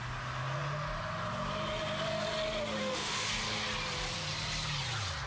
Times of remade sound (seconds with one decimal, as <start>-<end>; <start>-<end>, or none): 2.8-3.3